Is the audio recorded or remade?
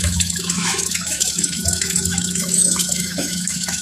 remade